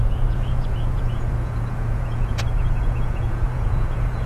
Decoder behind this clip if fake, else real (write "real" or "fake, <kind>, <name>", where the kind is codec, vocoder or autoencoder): fake, vocoder, Vocos